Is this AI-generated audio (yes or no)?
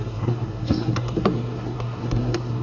yes